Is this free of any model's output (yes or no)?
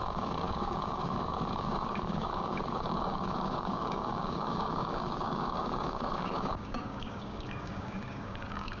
no